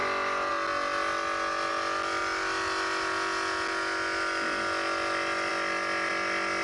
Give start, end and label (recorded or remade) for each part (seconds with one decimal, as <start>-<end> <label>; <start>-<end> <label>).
0.0-6.6 recorded